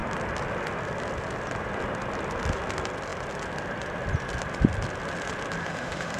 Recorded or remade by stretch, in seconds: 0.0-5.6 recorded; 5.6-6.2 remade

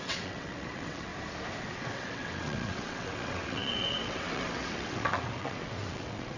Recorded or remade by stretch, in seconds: 0.0-1.1 remade; 1.1-1.6 recorded; 1.6-6.4 remade

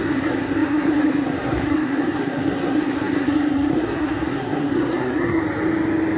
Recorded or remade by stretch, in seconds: 0.0-5.4 remade; 5.4-6.2 recorded

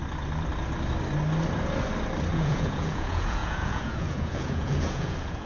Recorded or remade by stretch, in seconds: 0.0-2.3 recorded; 2.3-5.5 remade

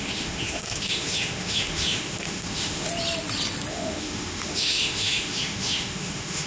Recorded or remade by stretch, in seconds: 0.0-2.9 remade; 2.9-3.7 recorded; 3.7-6.5 remade